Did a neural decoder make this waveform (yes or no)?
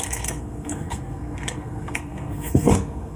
yes